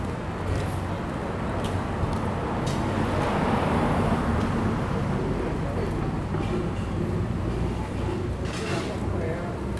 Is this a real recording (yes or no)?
yes